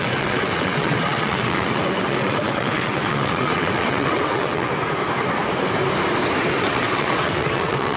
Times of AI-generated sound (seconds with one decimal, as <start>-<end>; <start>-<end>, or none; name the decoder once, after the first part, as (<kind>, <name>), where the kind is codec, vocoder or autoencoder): 0.0-4.7 (vocoder, WaveNeXt); 6.5-8.0